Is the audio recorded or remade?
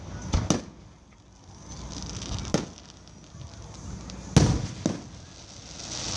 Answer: recorded